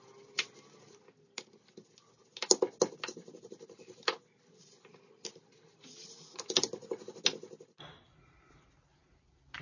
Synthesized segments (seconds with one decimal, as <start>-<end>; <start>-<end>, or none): none